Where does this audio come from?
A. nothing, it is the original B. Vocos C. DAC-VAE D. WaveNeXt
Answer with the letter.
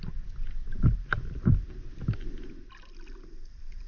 A